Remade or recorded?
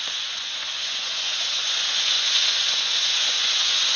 remade